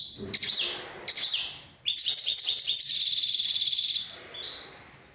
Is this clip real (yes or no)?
yes